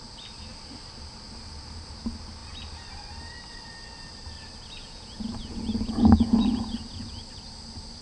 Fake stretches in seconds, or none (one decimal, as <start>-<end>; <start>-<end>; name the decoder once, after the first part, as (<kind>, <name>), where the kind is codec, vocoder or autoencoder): 4.8-7.2 (vocoder, Vocos)